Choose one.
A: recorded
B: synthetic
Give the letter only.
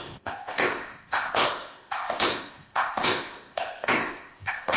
B